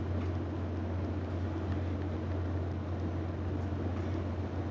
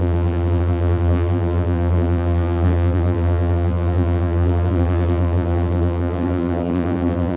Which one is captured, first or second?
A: first